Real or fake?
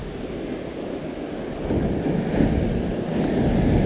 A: real